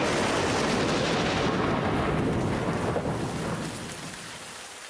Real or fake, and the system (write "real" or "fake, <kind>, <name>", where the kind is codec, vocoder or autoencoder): real